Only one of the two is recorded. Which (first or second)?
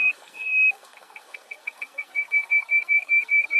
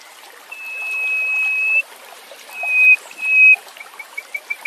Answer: second